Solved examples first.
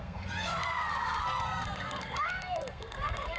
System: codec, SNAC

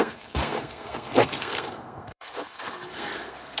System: codec, SNAC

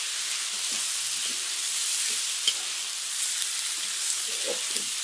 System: none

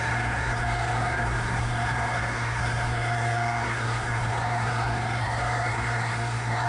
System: codec, SNAC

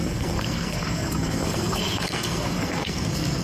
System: codec, SNAC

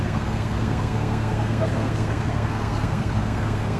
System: codec, SNAC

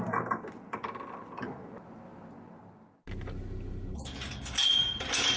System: none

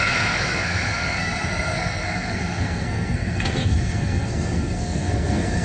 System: codec, SNAC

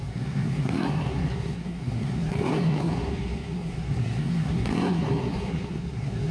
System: codec, SNAC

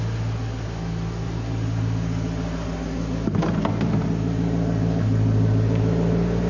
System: none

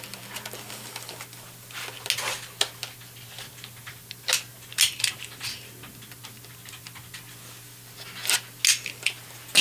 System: none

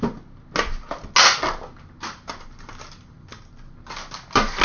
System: none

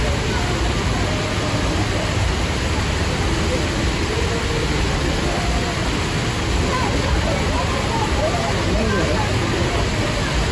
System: none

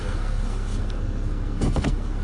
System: codec, SNAC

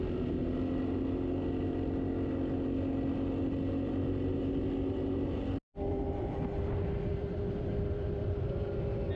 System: none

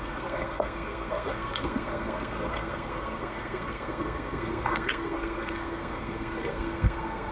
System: codec, SNAC